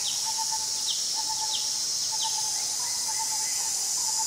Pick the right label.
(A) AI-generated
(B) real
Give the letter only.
B